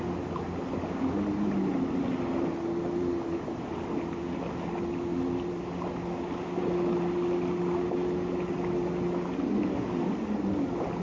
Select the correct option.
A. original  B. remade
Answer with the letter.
A